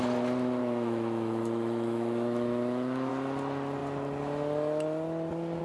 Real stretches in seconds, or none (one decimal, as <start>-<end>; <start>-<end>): 0.0-0.6; 3.1-5.6